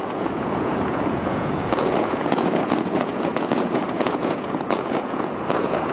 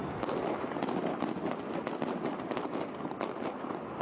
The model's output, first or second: first